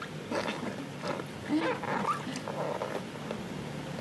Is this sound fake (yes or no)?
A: no